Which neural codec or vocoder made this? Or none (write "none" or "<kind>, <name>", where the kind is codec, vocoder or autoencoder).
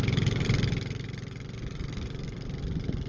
none